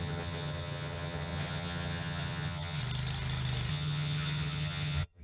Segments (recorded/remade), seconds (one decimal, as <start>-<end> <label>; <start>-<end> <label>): 0.0-2.8 remade; 2.8-3.7 recorded; 3.7-5.2 remade